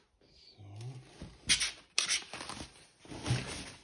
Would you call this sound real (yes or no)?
yes